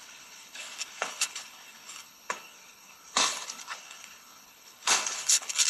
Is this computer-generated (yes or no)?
yes